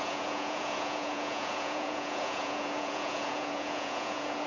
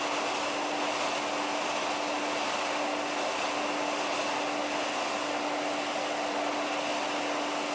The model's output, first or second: first